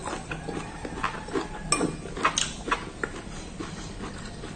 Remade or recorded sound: recorded